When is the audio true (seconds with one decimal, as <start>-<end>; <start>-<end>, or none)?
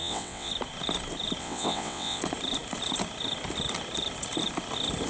0.5-1.4; 2.2-5.1